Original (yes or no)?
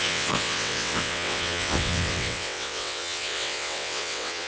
no